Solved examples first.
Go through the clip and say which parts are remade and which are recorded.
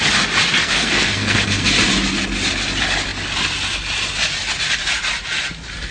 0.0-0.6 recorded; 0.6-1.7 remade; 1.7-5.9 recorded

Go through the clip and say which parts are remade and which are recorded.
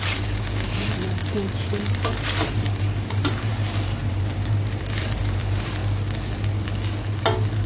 0.0-3.5 remade; 3.5-4.1 recorded; 4.1-5.8 remade; 5.8-7.7 recorded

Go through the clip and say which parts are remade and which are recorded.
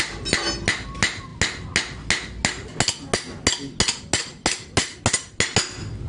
0.0-6.1 recorded